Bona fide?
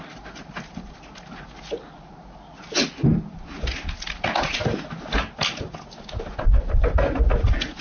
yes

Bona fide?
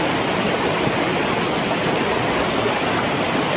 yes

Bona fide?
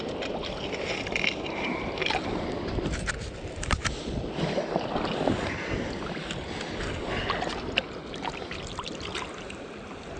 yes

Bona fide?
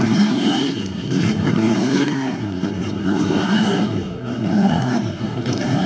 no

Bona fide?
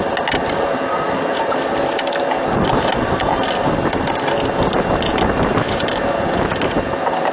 yes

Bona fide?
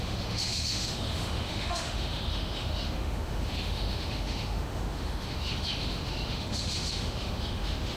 no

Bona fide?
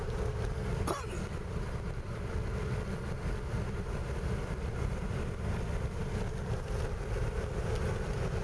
yes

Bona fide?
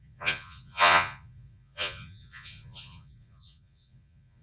no